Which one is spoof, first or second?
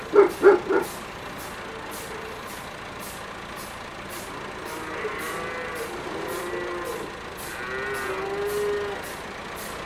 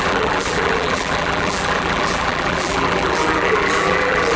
second